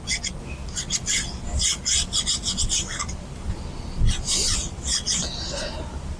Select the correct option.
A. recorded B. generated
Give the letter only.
A